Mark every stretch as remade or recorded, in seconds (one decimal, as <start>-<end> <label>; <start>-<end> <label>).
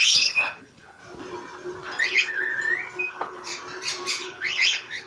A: 0.0-1.0 remade; 1.0-2.0 recorded; 2.0-2.5 remade; 2.5-3.1 recorded; 3.1-3.5 remade; 3.5-4.1 recorded; 4.1-5.1 remade